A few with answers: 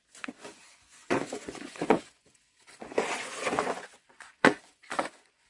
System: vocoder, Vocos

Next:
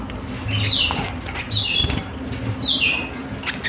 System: none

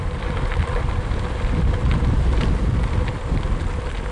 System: none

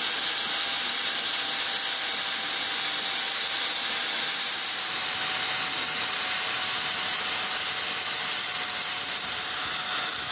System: none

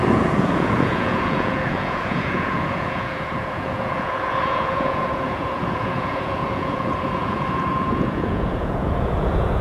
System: vocoder, Vocos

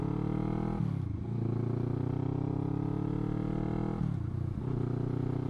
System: none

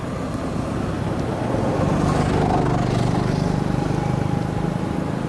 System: none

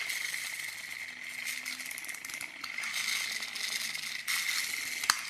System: none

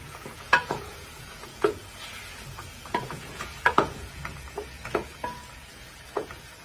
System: vocoder, Vocos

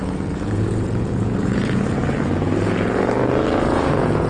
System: vocoder, Vocos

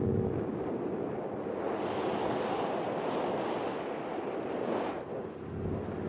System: none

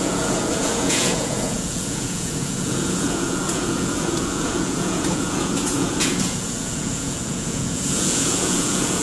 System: vocoder, Vocos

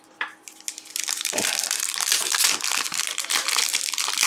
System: none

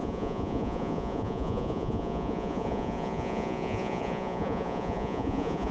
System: vocoder, Vocos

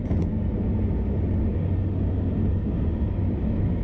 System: none